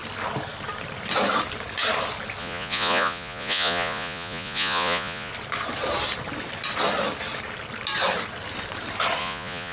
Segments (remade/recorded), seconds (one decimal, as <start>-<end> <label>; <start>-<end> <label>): 0.0-2.4 recorded; 2.4-5.3 remade; 5.3-9.2 recorded; 9.2-9.7 remade

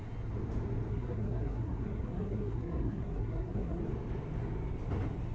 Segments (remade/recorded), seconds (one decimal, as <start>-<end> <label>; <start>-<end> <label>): 0.0-0.9 recorded; 0.9-3.8 remade; 3.8-5.3 recorded

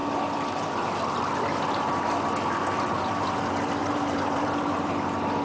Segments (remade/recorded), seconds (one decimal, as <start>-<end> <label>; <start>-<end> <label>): 0.0-3.8 recorded; 3.8-4.9 remade; 4.9-5.4 recorded

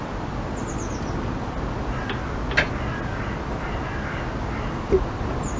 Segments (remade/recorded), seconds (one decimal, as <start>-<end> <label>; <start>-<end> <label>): 0.0-5.6 recorded

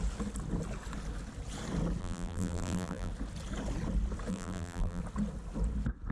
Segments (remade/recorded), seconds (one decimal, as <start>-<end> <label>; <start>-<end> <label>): 0.0-2.0 recorded; 2.0-3.1 remade; 3.1-4.3 recorded; 4.3-5.0 remade; 5.0-6.1 recorded

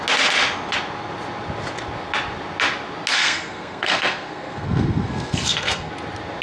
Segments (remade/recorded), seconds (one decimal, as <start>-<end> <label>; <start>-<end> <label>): 0.0-3.1 recorded; 3.1-5.9 remade; 5.9-6.4 recorded

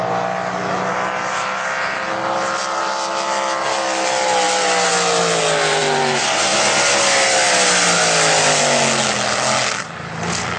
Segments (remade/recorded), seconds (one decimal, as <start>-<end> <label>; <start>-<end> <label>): 0.0-10.6 recorded